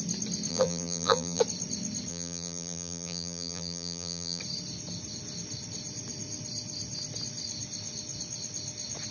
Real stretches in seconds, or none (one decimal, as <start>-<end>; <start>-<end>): 0.0-0.5; 1.4-2.1; 4.4-9.1